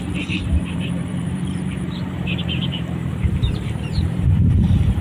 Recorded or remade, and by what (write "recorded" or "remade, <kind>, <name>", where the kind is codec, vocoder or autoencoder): remade, vocoder, BigVGAN v2